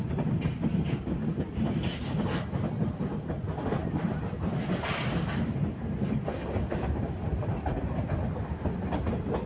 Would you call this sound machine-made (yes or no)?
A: no